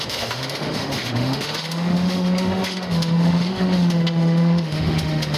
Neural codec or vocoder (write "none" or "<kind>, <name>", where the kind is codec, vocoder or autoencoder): autoencoder, DAC-VAE